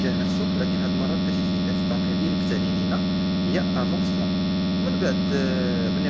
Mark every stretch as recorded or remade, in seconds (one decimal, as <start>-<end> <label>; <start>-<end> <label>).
0.0-0.6 remade; 0.6-6.1 recorded